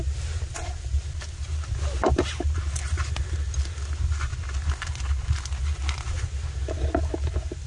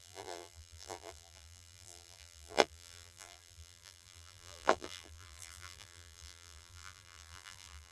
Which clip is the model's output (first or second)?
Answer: second